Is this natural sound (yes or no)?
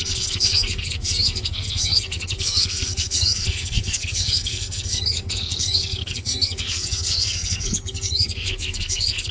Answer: no